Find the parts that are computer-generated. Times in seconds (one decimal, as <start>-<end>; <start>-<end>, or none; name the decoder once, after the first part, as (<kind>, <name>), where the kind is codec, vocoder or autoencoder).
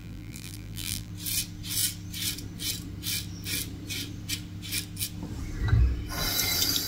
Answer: 0.0-1.1 (vocoder, BigVGAN v2)